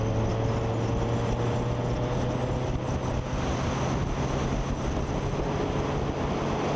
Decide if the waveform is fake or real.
real